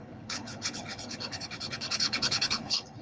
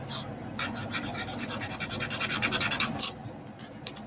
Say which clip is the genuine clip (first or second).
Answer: second